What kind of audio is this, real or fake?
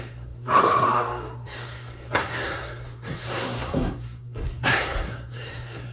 fake